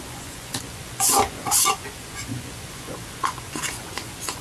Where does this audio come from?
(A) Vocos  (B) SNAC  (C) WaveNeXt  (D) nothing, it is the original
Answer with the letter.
A